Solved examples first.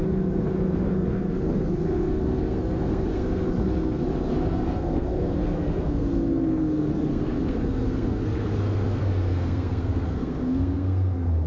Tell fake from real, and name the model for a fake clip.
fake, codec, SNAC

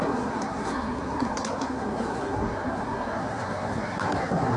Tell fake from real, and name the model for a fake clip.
fake, codec, SNAC